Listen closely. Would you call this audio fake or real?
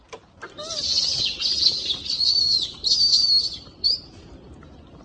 real